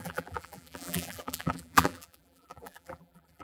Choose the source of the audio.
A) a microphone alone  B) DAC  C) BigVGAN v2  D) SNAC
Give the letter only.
C